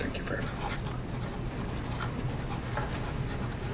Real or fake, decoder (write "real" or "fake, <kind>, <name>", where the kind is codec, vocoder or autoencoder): real